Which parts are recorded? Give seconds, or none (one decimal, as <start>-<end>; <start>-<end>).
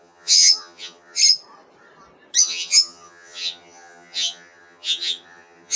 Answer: 1.2-2.4